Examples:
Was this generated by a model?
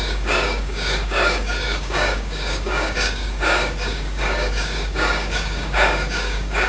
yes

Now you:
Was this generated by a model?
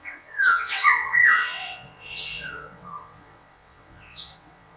yes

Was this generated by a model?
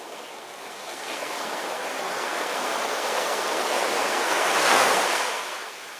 yes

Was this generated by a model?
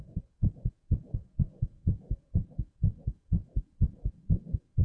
yes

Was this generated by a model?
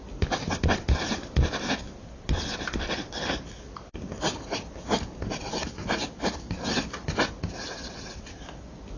no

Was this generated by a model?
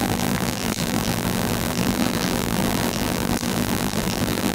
yes